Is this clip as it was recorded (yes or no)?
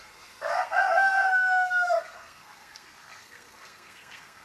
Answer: no